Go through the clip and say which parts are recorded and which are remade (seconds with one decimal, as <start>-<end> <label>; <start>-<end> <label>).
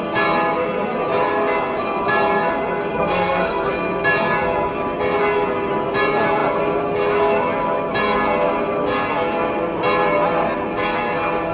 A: 0.0-2.9 recorded; 2.9-3.7 remade; 3.7-11.5 recorded